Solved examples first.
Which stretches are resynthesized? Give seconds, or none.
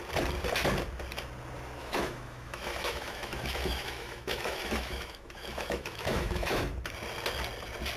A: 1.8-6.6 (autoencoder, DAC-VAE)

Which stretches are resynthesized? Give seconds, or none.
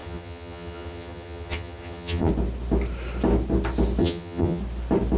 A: 0.0-2.3 (vocoder, HiFi-GAN); 4.0-4.6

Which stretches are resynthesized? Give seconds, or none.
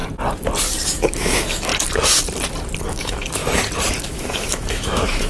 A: 0.9-1.7 (autoencoder, DAC-VAE); 2.9-3.4; 4.0-5.3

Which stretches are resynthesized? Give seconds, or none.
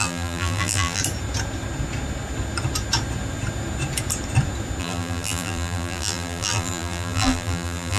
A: 0.0-1.0 (vocoder, BigVGAN v2); 4.8-8.0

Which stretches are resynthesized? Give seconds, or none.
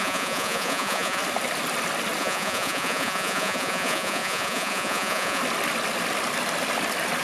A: 0.0-1.2 (vocoder, Vocos); 2.2-5.4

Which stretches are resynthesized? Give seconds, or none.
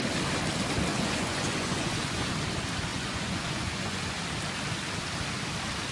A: 0.9-2.3 (vocoder, Vocos); 2.9-4.2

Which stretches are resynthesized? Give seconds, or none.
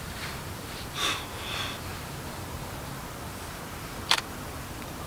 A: 0.0-1.9 (vocoder, BigVGAN v2); 4.0-5.1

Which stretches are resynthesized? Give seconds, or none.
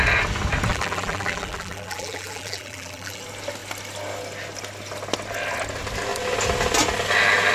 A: 0.7-3.2 (vocoder, BigVGAN v2)